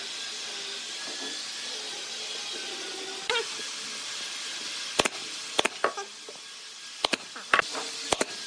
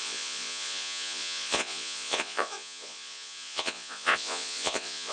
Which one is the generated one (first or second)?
second